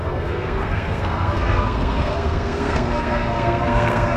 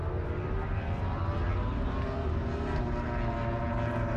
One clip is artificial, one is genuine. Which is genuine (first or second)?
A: second